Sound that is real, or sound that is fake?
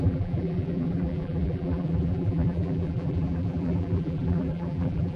fake